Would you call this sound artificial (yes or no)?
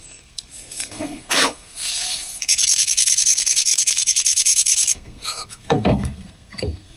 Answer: yes